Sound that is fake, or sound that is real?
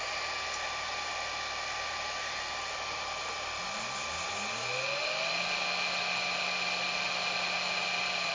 real